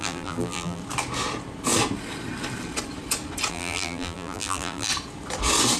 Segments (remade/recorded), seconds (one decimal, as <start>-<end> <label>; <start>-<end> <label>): 0.0-0.8 remade; 0.8-3.5 recorded; 3.5-4.9 remade; 4.9-5.8 recorded